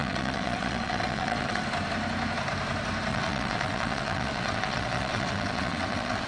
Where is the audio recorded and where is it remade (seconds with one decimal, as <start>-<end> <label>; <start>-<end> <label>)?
0.0-1.6 remade; 1.6-3.1 recorded; 3.1-6.3 remade